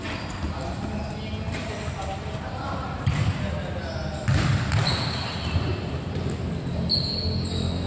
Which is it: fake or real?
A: real